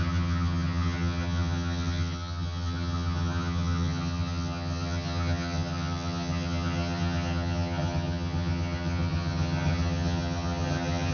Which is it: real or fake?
fake